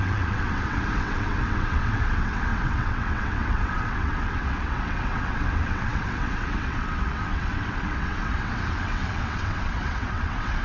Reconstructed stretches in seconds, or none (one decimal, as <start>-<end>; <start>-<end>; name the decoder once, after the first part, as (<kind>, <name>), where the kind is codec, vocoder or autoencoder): 0.0-10.6 (vocoder, WaveNeXt)